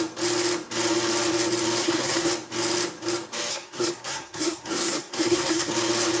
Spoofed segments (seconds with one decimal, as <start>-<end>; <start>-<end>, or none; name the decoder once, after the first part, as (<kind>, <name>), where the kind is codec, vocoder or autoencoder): 1.8-2.3 (codec, SNAC); 3.5-5.7